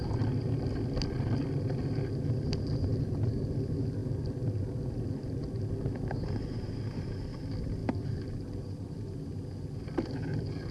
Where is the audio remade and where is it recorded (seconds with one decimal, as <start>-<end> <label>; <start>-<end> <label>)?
0.0-10.7 recorded